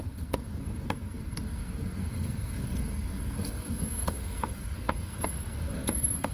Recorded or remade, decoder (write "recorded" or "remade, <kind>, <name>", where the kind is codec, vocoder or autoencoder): remade, codec, SNAC